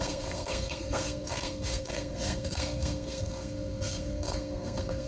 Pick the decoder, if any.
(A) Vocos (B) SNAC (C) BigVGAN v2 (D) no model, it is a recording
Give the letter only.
B